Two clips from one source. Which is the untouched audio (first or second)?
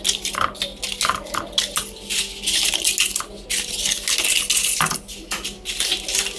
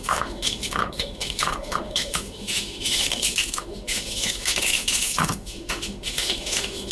first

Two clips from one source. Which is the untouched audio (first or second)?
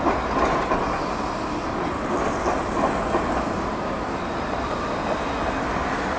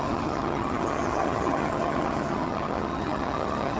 first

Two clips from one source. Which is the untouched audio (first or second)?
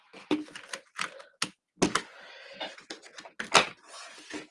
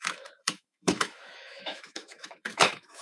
first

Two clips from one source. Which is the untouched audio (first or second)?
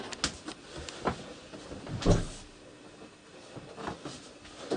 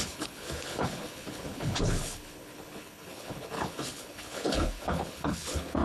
first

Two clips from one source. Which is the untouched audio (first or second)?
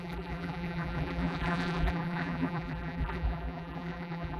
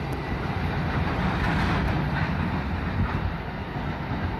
second